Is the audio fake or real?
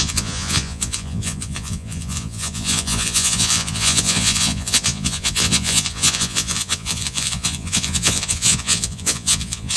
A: fake